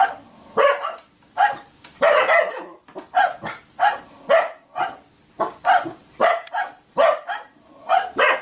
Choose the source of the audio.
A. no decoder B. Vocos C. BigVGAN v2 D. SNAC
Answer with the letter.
A